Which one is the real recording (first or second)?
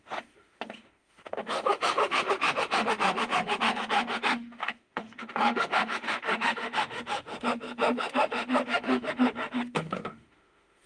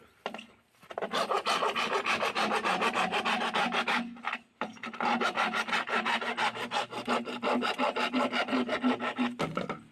second